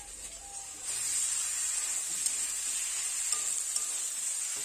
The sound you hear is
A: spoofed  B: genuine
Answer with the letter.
B